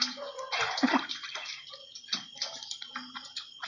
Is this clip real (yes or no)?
yes